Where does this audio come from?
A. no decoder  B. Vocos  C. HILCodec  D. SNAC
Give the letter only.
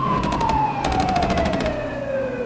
B